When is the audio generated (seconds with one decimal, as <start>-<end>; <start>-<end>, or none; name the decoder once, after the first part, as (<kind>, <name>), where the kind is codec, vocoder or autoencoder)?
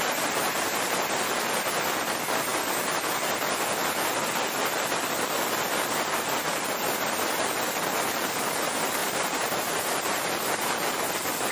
9.0-9.6 (vocoder, BigVGAN v2)